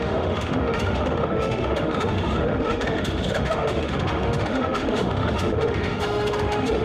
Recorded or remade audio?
remade